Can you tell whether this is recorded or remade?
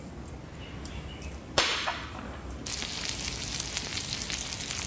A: recorded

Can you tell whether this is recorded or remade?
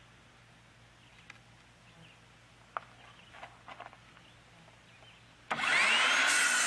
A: recorded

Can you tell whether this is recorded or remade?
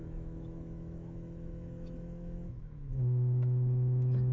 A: remade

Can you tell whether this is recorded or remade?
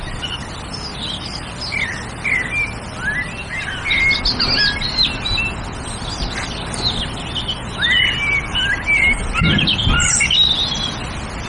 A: recorded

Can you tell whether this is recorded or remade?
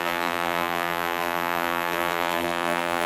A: remade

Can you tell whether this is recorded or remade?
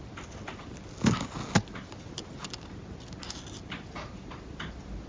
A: recorded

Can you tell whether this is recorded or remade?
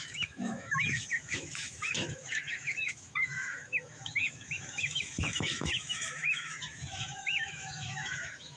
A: remade